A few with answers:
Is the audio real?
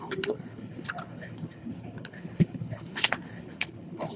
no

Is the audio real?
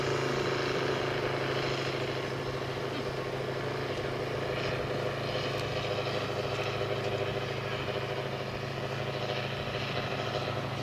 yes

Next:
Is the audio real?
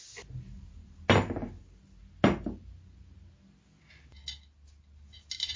yes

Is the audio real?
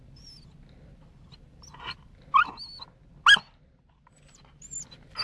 yes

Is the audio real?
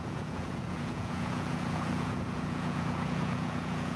no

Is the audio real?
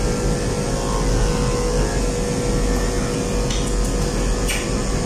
yes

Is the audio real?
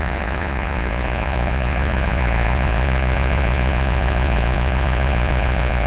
no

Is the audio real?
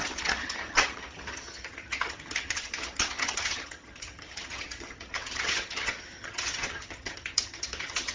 no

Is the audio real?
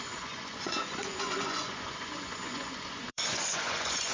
no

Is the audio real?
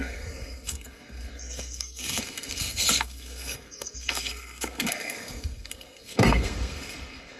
no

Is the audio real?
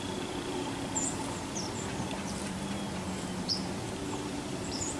no